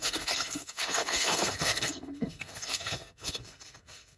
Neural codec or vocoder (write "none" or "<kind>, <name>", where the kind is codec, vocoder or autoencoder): codec, SNAC